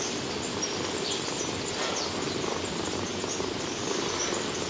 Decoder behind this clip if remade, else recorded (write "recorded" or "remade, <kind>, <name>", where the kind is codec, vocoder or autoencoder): recorded